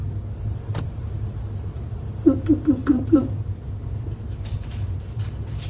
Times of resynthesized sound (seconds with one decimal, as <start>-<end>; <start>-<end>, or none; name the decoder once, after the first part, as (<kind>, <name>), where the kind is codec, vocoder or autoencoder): 0.0-1.0 (vocoder, BigVGAN v2); 2.8-5.7

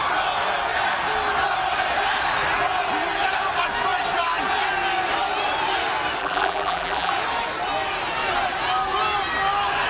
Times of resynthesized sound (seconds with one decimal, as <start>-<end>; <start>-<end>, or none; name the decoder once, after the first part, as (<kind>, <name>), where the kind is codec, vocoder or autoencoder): 6.2-7.1 (vocoder, BigVGAN v2)

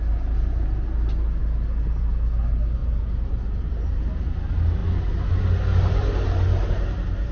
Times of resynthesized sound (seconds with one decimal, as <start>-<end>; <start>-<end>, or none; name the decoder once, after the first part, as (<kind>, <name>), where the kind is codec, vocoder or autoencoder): none

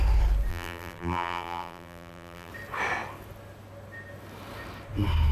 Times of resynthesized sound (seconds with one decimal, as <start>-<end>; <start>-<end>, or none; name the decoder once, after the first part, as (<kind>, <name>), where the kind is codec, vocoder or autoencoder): 0.5-2.5 (vocoder, BigVGAN v2)